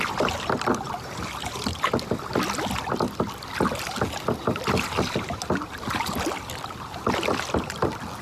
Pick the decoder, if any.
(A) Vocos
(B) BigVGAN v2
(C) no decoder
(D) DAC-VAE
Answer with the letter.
C